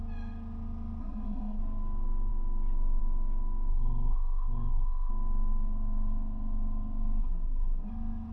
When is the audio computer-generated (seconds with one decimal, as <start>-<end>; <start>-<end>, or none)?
1.0-1.6; 3.7-5.1; 7.2-7.9